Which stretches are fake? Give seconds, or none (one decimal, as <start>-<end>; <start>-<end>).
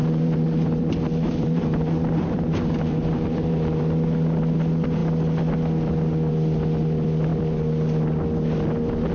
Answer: 0.0-3.8